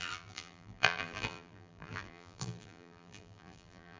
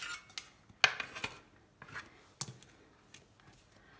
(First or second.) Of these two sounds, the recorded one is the second